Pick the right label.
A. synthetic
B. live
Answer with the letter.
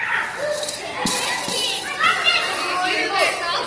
B